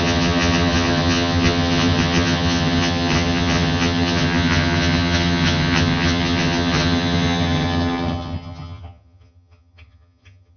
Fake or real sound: fake